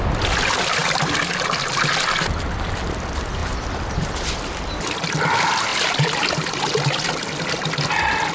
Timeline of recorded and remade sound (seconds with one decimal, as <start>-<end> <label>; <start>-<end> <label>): 0.0-0.8 recorded; 0.8-1.7 remade; 1.7-3.4 recorded; 3.4-4.6 remade; 4.6-8.3 recorded